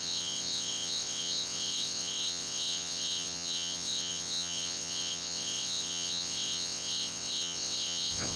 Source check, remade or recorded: remade